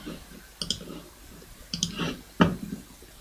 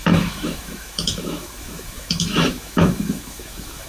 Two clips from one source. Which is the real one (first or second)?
first